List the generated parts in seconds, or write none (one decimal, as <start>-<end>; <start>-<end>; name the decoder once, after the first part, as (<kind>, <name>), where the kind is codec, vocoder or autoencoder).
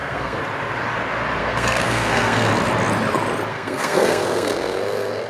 0.0-0.4 (codec, SNAC); 1.4-2.5; 3.5-5.3